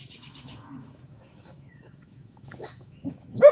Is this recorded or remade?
remade